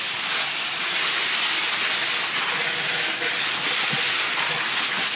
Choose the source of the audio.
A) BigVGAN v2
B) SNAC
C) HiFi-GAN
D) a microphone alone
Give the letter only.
D